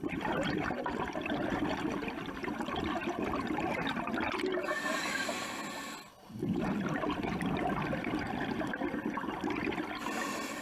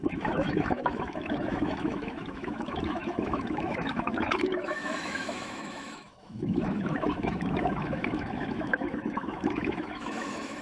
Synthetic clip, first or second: second